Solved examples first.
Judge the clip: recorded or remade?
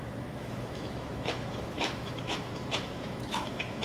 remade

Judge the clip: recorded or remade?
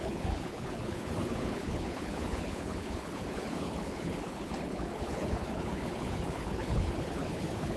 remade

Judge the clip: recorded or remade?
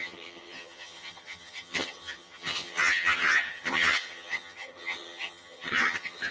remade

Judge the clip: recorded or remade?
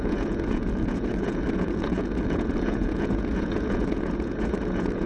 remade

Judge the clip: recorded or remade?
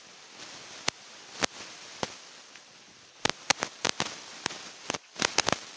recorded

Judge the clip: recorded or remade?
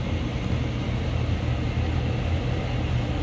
recorded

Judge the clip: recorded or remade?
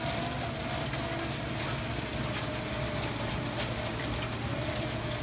recorded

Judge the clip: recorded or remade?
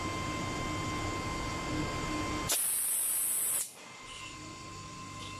recorded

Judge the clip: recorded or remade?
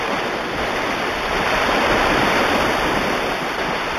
remade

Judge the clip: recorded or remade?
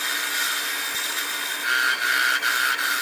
recorded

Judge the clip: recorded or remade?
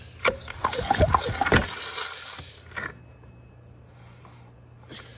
recorded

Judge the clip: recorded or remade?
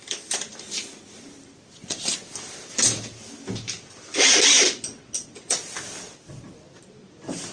recorded